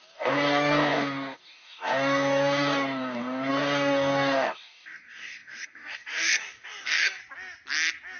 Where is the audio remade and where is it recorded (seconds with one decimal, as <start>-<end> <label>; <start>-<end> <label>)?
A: 0.0-7.2 remade; 7.2-8.2 recorded